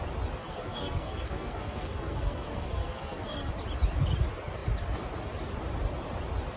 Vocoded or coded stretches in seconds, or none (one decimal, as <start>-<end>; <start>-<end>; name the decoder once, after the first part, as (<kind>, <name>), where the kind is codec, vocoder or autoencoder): 0.4-3.5 (codec, SNAC)